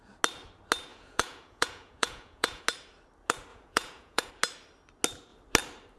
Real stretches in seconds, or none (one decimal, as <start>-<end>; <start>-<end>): 0.0-0.9; 2.6-3.5; 4.3-6.0